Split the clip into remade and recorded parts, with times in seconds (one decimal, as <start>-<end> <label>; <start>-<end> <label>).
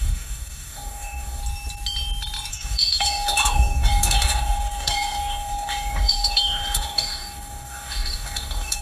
0.0-1.4 remade; 1.4-2.5 recorded; 2.5-8.8 remade